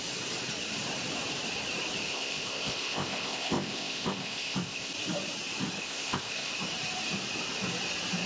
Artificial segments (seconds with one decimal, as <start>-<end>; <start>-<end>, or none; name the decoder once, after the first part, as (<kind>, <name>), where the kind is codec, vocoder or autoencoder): 2.1-4.9 (codec, ZipCodec); 5.8-6.5